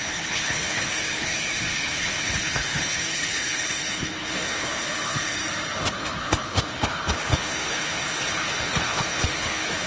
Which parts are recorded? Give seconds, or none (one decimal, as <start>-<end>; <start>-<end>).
5.4-5.9